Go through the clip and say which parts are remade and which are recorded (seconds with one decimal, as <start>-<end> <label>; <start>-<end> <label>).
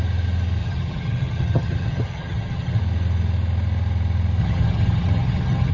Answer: 0.0-0.6 recorded; 0.6-2.8 remade; 2.8-4.4 recorded; 4.4-5.7 remade